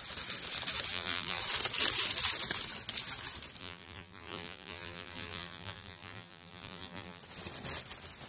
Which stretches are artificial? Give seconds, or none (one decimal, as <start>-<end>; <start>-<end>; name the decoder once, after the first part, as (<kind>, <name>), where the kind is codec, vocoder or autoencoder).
0.9-1.4 (vocoder, BigVGAN v2); 3.6-7.2